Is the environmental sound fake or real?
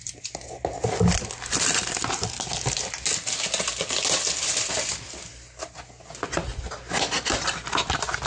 real